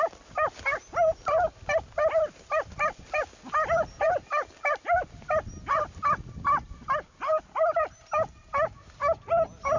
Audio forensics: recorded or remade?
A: recorded